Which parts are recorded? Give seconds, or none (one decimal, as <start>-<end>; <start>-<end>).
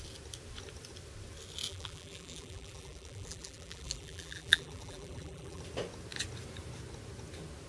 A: 0.0-1.7; 5.6-7.7